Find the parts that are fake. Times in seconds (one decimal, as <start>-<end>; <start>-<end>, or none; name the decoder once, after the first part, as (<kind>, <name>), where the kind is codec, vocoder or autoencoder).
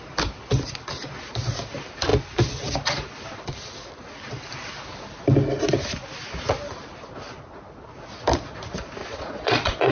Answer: 9.0-9.9 (vocoder, Vocos)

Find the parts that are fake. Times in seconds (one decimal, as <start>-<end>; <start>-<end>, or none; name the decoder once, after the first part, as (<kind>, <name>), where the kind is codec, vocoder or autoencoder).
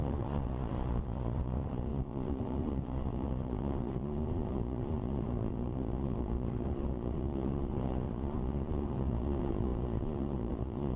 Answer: 0.0-11.0 (vocoder, Vocos)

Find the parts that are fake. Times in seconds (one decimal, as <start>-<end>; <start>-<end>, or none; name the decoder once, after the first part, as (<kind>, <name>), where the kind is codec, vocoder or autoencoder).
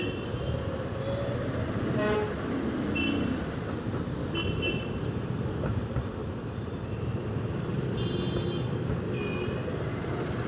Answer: none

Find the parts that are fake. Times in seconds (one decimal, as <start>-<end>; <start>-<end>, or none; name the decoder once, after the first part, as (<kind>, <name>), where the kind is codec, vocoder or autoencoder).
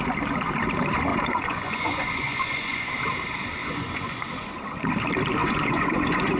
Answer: 1.1-2.9 (vocoder, Vocos); 3.6-4.2; 5.4-6.4